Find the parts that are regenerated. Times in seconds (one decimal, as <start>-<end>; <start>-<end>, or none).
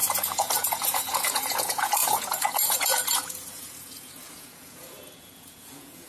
0.0-6.1